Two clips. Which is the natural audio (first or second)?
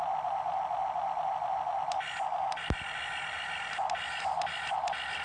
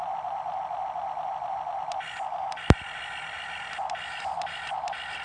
first